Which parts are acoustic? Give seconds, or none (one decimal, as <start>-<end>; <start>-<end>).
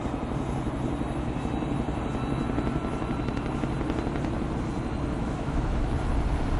0.0-5.2; 5.9-6.6